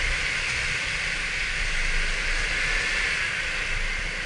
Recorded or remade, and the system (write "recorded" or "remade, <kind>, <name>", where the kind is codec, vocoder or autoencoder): recorded